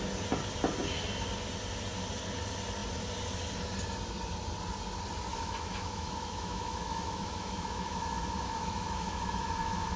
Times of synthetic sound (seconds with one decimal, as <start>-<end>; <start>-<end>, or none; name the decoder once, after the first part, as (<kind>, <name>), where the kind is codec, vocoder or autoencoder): 5.3-10.0 (autoencoder, DAC-VAE)